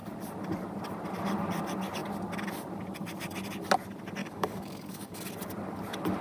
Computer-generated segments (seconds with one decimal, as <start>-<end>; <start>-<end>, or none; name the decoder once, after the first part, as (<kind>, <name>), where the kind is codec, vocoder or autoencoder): 4.2-5.3 (codec, DAC)